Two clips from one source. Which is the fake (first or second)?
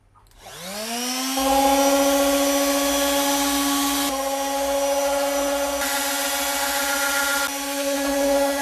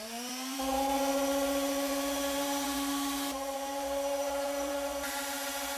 second